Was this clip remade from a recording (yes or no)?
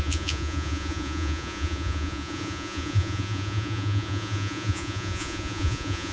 yes